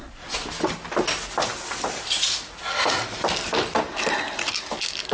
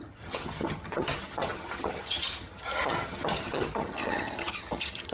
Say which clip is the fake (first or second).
second